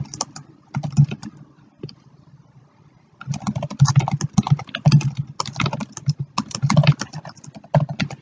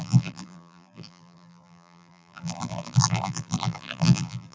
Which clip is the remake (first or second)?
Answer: second